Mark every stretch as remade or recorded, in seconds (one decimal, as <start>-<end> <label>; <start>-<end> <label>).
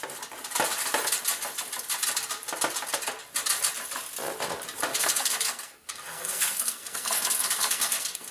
0.0-4.9 recorded; 4.9-8.3 remade